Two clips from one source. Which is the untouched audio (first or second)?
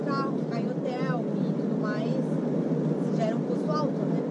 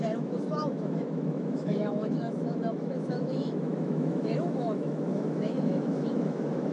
first